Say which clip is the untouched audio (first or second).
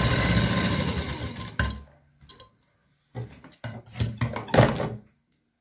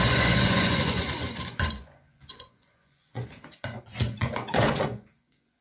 first